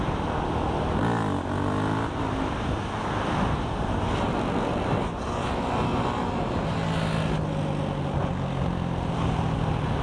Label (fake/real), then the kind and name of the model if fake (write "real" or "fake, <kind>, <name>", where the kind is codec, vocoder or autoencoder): real